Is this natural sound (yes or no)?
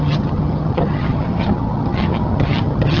no